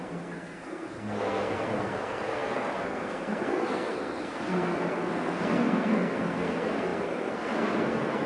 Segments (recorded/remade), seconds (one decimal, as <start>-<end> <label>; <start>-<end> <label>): 0.0-8.3 remade